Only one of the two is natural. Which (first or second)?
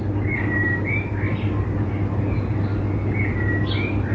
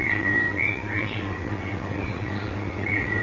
first